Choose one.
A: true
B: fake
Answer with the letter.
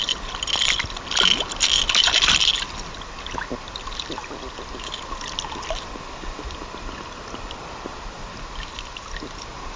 A